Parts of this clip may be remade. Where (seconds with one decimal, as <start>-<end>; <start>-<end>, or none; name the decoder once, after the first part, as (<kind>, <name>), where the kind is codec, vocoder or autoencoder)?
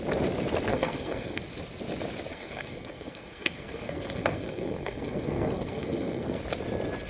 0.7-1.4 (codec, SNAC); 2.3-6.4